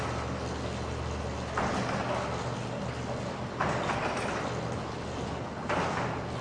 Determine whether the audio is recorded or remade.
recorded